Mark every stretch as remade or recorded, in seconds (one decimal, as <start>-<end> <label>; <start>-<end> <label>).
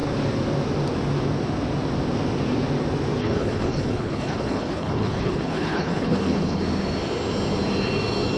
0.0-3.2 recorded; 3.2-6.6 remade; 6.6-8.4 recorded